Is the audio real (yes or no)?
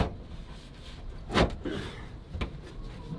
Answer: yes